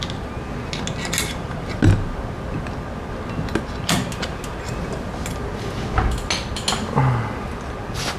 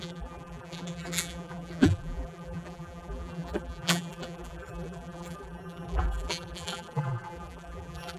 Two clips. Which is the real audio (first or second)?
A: first